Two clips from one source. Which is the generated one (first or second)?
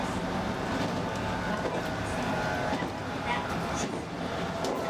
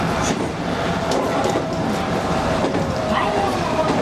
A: second